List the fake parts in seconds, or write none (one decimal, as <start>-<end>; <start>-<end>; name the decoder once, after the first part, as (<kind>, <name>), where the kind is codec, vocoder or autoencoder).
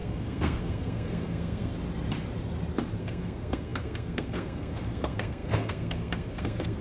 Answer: 0.0-1.7 (codec, SNAC); 3.0-6.8